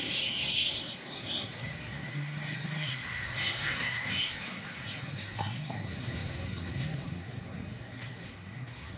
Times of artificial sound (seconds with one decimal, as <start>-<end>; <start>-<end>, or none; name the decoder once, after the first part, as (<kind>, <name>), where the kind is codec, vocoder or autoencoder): 0.0-9.0 (codec, SNAC)